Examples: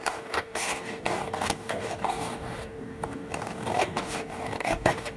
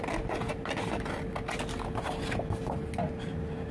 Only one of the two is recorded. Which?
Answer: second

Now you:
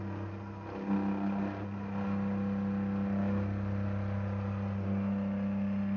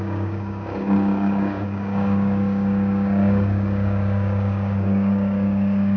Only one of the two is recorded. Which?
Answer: first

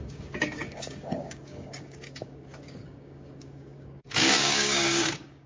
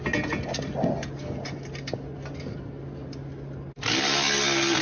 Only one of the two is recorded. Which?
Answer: second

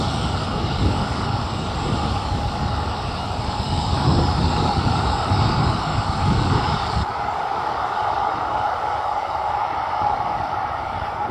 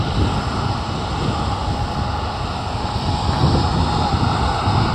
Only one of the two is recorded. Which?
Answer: second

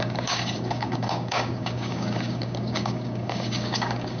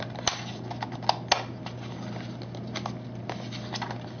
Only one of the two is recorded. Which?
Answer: second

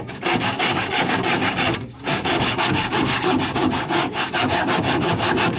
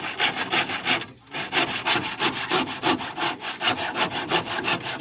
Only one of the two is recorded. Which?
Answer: second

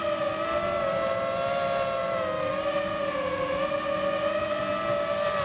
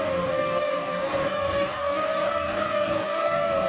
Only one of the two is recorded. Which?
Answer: first